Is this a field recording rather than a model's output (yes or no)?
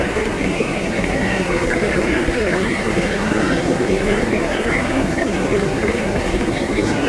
no